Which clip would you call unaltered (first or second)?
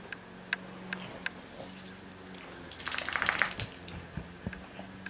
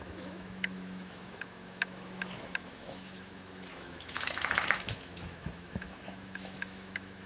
first